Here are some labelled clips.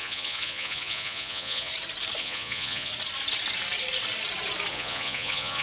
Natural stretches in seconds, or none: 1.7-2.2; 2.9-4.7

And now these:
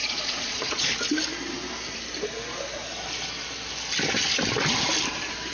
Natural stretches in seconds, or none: 0.9-5.5